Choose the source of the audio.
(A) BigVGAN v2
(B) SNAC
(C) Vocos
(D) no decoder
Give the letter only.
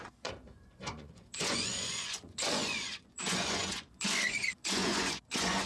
C